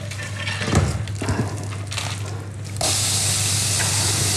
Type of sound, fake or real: real